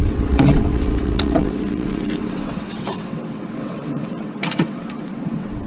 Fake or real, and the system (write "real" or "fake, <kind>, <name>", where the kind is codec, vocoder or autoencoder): fake, vocoder, WaveNeXt